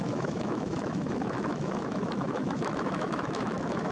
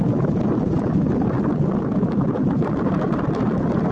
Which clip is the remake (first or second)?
first